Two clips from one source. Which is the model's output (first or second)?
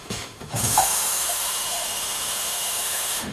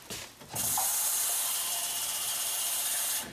first